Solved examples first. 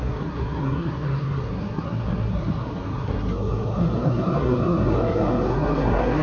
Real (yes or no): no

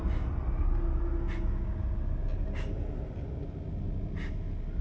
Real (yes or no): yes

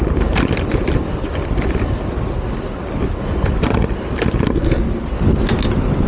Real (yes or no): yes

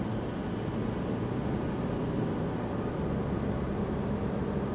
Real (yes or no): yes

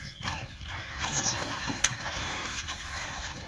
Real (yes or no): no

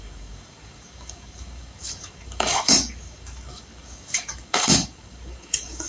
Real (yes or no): no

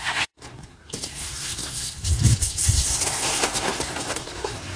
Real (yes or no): no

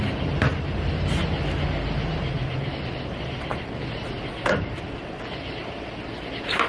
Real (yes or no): yes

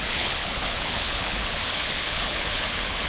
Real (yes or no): no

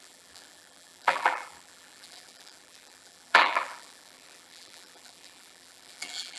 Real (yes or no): no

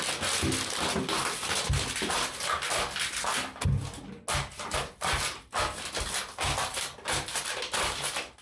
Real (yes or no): yes